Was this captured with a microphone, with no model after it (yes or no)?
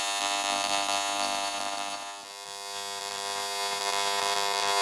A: yes